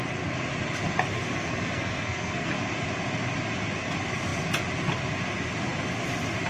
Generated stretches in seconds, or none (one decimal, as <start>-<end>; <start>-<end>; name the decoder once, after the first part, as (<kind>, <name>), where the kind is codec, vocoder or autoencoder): 1.1-2.5 (codec, SNAC)